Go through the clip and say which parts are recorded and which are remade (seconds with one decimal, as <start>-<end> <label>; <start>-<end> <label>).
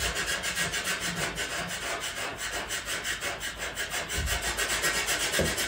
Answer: 0.0-5.7 recorded